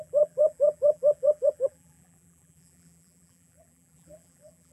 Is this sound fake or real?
fake